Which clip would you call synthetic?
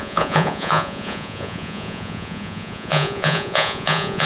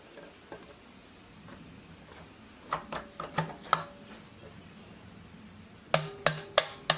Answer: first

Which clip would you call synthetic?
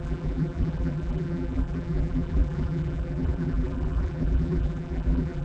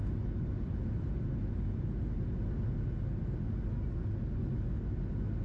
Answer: first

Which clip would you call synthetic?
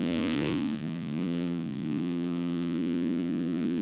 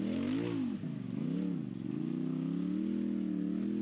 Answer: first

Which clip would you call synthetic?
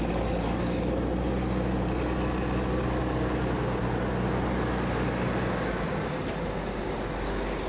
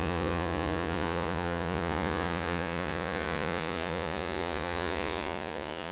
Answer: second